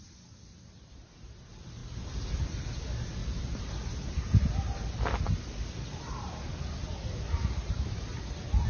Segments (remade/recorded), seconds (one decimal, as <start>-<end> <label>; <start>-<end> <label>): 0.0-8.7 recorded